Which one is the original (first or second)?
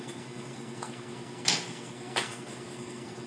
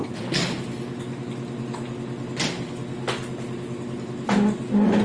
second